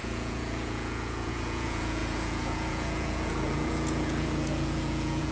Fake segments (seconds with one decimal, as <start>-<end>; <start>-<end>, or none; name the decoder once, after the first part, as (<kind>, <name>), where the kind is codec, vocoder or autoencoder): 0.0-5.3 (vocoder, Vocos)